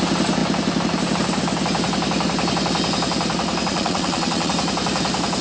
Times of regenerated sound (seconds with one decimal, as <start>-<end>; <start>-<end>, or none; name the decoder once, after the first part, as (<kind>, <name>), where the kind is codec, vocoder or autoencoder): 3.7-4.5 (vocoder, Vocos)